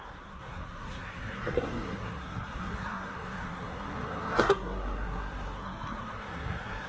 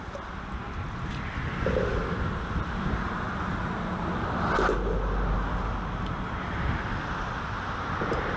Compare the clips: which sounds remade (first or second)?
first